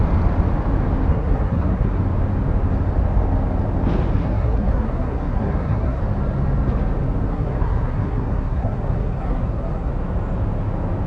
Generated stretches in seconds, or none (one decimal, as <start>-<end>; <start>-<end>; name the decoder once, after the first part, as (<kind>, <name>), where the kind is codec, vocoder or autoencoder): 1.1-2.0 (codec, SNAC); 4.2-6.0; 7.3-9.9